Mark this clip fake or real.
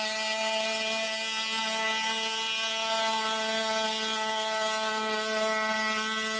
real